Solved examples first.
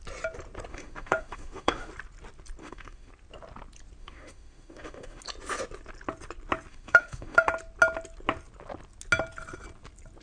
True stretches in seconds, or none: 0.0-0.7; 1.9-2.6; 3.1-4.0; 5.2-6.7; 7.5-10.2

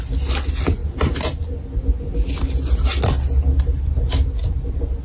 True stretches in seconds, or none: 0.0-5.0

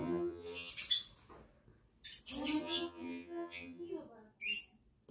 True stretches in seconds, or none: 0.7-2.6; 3.9-5.1

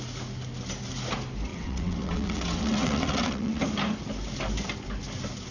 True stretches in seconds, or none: 0.0-1.5; 3.6-5.5

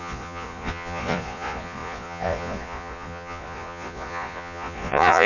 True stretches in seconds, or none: none

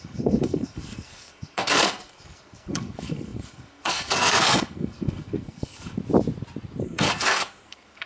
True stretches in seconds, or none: 6.0-6.8